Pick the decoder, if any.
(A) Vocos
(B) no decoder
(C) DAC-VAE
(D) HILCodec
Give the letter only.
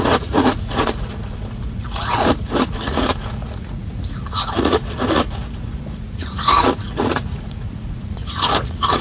A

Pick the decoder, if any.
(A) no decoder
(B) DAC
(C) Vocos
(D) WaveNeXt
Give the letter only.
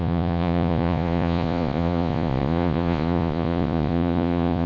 C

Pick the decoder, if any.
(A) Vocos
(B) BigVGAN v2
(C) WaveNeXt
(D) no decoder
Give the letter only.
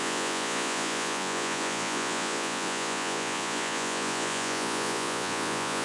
A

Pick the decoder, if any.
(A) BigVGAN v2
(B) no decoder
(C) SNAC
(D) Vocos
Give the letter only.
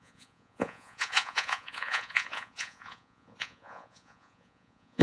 D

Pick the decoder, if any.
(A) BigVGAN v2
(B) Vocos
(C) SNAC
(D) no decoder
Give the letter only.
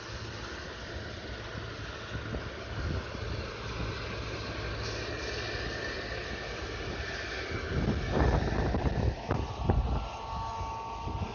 D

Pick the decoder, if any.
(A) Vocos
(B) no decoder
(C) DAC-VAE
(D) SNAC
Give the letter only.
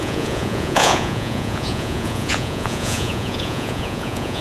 A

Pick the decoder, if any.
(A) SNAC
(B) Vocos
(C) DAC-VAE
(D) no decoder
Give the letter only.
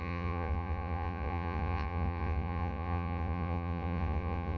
B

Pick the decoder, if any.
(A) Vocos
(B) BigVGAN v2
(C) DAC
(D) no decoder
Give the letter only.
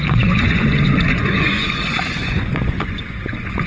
A